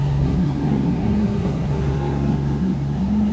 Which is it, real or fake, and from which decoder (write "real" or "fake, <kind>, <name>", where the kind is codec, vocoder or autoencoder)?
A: fake, codec, SNAC